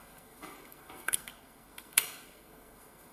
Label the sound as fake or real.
fake